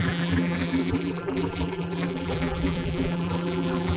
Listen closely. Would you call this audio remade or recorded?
remade